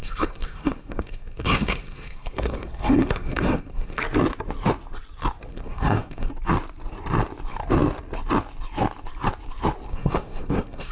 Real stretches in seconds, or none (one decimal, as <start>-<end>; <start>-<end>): 4.0-5.5; 6.3-9.9

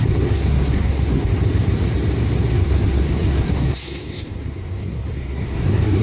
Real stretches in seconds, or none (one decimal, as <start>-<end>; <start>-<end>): 1.3-2.5

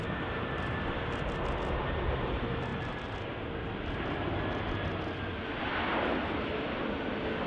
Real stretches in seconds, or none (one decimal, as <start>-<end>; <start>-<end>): 0.0-7.5

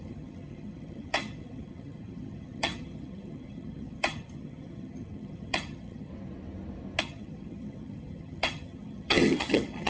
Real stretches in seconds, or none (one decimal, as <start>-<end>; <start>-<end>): 6.1-7.0